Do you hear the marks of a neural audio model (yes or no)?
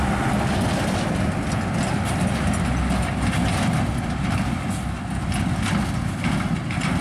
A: no